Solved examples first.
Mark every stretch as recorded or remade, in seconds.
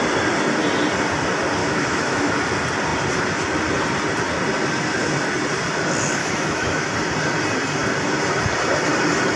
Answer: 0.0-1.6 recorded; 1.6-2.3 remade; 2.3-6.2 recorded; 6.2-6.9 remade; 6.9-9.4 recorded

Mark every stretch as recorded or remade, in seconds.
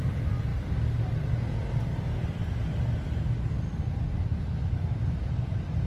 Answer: 0.0-5.9 recorded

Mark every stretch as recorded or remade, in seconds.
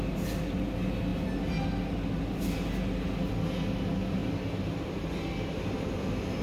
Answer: 0.0-6.4 recorded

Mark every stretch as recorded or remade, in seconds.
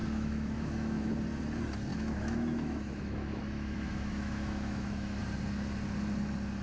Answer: 0.0-1.1 remade; 1.1-1.9 recorded; 1.9-5.2 remade; 5.2-6.6 recorded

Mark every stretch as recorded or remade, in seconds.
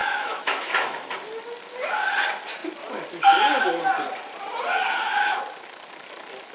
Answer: 0.0-1.1 remade; 1.1-6.5 recorded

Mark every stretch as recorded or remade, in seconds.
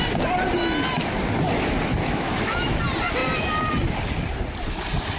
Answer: 0.0-2.0 recorded; 2.0-2.8 remade; 2.8-5.2 recorded